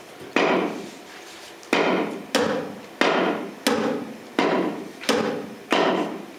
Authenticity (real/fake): real